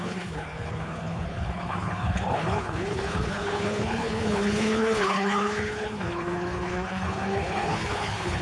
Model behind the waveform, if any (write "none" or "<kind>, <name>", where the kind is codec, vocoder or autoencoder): codec, HILCodec